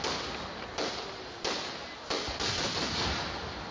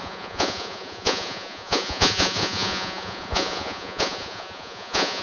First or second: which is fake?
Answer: second